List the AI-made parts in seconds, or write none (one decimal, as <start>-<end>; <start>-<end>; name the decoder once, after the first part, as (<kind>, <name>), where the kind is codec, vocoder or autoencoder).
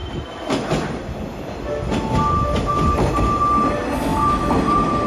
none